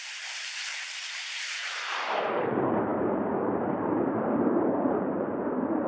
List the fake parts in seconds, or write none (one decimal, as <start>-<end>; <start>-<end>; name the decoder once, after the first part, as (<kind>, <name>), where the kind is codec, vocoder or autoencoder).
0.0-2.9 (vocoder, BigVGAN v2); 3.7-5.9